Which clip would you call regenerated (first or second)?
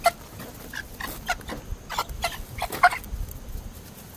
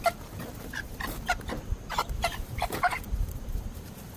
second